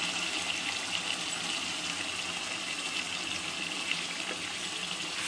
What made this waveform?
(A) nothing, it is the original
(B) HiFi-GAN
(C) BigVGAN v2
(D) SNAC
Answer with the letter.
A